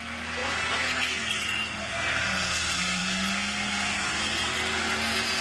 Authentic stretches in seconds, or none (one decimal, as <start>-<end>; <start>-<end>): none